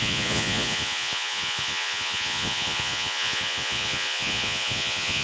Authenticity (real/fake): fake